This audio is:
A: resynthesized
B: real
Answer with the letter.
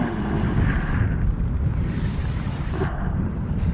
B